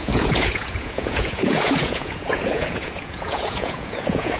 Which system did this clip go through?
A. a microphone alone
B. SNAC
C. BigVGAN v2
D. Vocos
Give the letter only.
D